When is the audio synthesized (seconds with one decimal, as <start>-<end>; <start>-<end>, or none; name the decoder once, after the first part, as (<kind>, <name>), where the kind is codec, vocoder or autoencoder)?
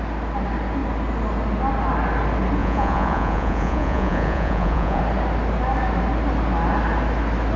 2.6-5.0 (vocoder, Vocos)